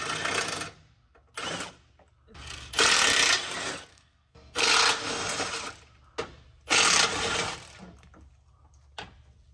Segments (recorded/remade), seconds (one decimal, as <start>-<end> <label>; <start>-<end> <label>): 0.0-3.9 recorded; 3.9-4.7 remade; 4.7-9.5 recorded